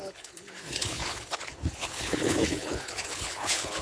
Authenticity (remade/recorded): remade